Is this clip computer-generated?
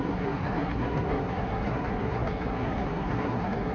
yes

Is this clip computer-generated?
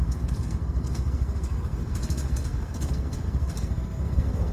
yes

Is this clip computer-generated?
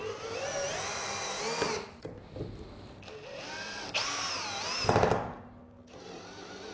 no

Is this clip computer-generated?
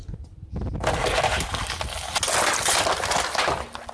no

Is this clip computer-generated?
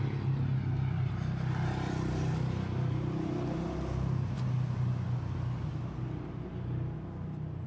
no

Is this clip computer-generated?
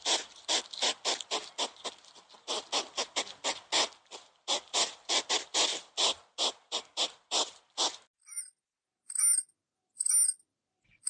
no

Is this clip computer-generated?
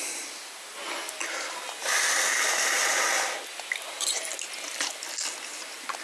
no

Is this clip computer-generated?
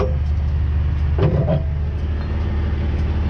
no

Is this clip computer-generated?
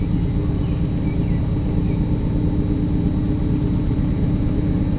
no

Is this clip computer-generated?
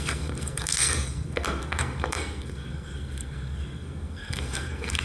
yes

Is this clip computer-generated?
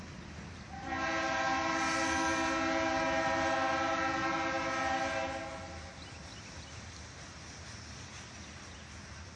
no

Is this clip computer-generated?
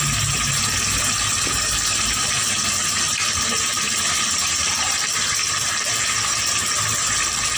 no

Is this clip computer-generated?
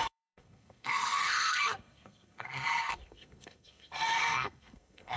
yes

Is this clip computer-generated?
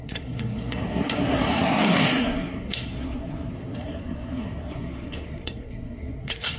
yes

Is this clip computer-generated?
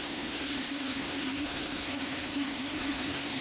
yes